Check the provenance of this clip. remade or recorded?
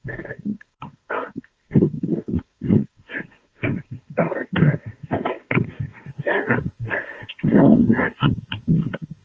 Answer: remade